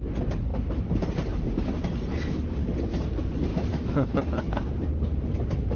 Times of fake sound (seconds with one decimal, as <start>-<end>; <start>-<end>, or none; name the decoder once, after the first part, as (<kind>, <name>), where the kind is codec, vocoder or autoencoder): 3.5-4.2 (autoencoder, DAC-VAE)